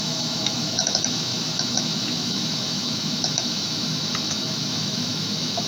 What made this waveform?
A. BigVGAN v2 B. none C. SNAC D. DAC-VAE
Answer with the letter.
D